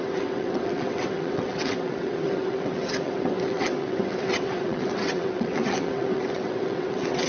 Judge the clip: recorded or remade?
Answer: remade